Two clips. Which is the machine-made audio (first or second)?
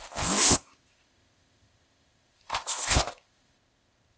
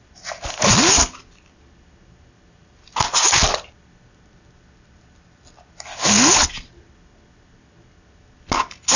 first